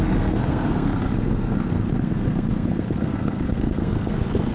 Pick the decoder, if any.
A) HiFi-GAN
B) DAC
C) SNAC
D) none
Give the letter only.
C